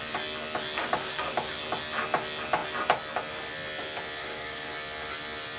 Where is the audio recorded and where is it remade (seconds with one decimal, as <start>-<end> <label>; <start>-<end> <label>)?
0.0-0.8 recorded; 0.8-1.6 remade; 1.6-4.2 recorded; 4.2-4.7 remade; 4.7-5.6 recorded